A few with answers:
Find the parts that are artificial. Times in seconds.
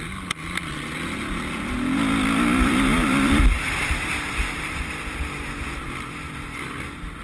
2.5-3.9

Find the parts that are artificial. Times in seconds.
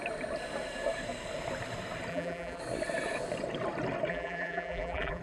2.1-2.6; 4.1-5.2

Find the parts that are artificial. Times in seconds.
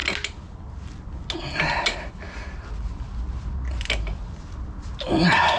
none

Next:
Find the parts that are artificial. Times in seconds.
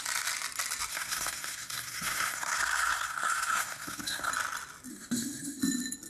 0.9-4.3; 4.9-5.6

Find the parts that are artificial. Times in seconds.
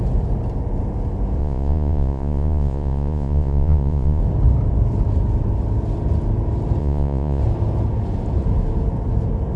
1.4-4.2; 6.8-7.4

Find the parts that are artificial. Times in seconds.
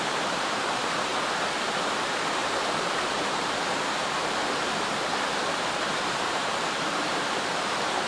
0.0-1.1; 2.0-8.1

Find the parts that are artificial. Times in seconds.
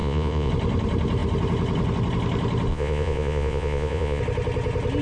0.0-0.5; 2.7-4.2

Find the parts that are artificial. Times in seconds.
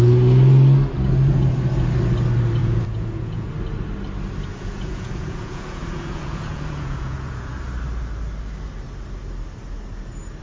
2.6-3.5; 4.5-7.6